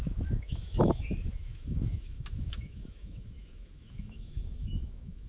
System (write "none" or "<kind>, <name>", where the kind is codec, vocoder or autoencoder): autoencoder, DAC-VAE